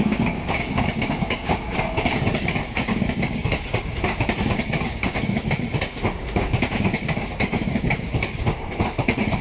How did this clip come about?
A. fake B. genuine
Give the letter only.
A